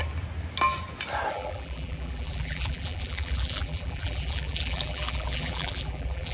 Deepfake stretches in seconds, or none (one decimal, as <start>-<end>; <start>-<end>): 1.3-6.3